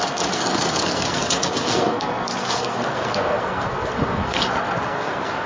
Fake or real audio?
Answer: fake